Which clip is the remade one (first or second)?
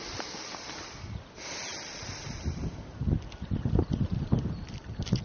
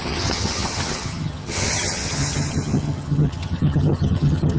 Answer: second